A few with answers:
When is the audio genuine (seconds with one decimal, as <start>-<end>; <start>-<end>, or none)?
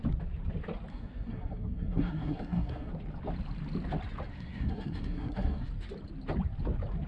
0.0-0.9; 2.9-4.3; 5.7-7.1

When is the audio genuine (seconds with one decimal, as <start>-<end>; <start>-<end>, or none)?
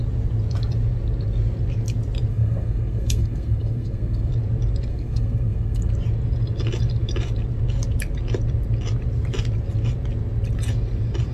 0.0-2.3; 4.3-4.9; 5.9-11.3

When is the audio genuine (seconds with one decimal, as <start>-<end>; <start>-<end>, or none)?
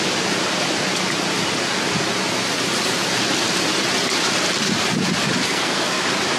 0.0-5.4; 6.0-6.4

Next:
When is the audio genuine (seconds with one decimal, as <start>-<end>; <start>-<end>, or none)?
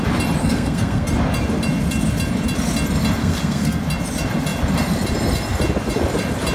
0.0-0.4; 1.1-3.2; 3.8-6.5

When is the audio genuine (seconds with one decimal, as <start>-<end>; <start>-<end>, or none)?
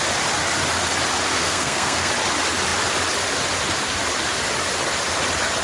0.0-1.3; 2.1-5.6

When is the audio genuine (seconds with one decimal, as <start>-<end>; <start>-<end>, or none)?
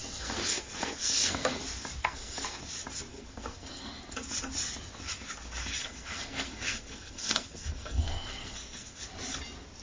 1.5-2.0; 2.6-3.1; 4.0-5.8; 9.0-9.8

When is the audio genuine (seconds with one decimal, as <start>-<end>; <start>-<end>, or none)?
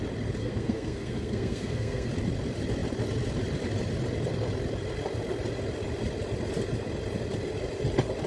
0.0-0.4; 2.1-8.3